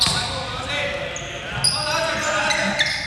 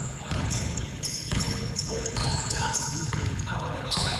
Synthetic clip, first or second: second